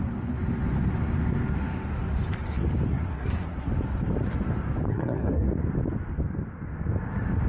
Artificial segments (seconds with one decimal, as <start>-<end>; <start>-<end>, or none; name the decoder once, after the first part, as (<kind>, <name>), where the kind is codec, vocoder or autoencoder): 2.9-3.7 (codec, SNAC); 4.9-5.5